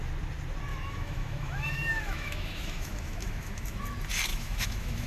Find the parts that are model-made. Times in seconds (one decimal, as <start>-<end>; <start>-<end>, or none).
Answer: 0.7-3.8; 4.3-5.1